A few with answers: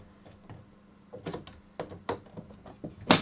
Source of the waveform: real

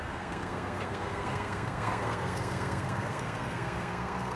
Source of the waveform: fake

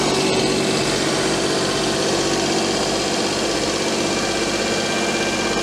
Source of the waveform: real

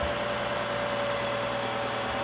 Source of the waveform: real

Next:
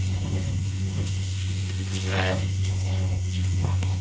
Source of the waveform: fake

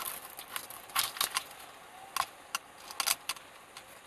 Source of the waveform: real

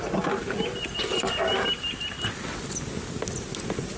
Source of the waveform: real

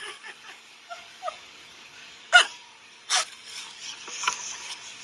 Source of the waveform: fake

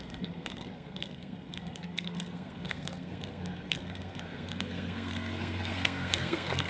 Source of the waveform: fake